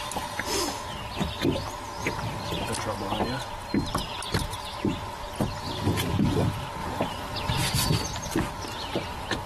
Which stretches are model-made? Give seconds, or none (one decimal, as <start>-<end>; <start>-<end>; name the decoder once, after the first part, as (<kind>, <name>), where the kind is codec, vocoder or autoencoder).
none